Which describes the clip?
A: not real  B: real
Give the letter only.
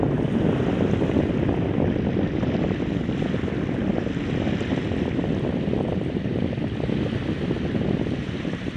B